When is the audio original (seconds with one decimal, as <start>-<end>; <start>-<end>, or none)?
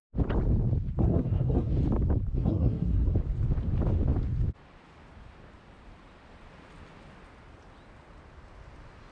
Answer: 0.0-1.0; 1.7-2.3; 3.1-9.1